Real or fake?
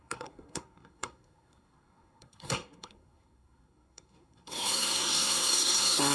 fake